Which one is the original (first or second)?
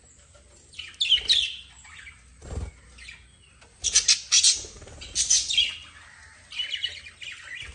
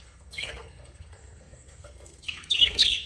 first